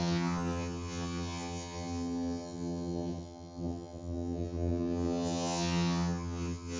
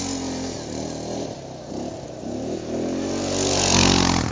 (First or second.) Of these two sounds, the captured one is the second